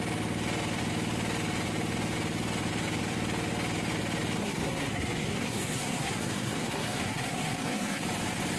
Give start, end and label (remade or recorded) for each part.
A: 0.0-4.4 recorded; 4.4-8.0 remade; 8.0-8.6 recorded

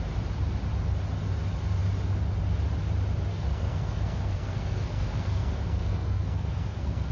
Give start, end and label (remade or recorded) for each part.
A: 0.0-3.3 recorded; 3.3-7.1 remade

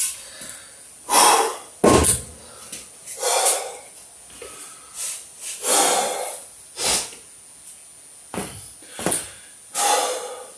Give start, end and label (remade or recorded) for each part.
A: 0.0-10.6 recorded

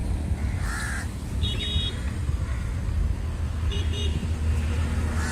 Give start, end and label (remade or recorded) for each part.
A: 0.0-3.7 recorded; 3.7-4.5 remade; 4.5-5.3 recorded

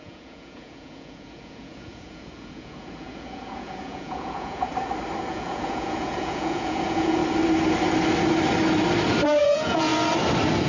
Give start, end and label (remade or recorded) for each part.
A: 0.0-4.7 remade; 4.7-5.3 recorded; 5.3-7.2 remade; 7.2-9.4 recorded; 9.4-9.9 remade; 9.9-10.7 recorded